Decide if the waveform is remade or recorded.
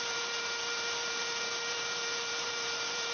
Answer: remade